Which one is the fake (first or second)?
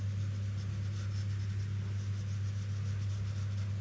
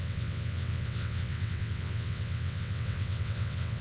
second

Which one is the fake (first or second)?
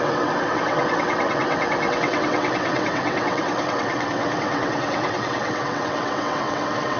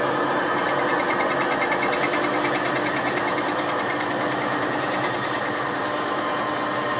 first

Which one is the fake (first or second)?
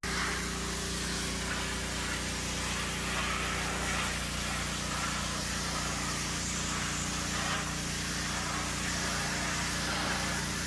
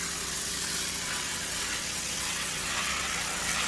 second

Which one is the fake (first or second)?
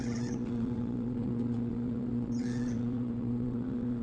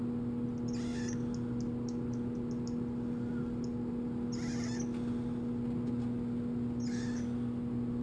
first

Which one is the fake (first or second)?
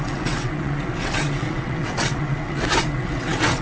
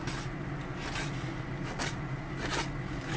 first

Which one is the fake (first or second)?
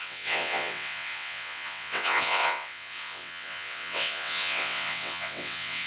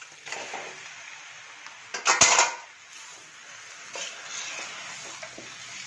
first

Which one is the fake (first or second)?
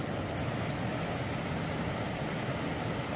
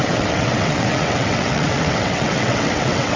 second